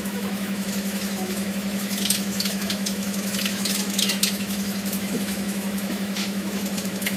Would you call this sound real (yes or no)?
no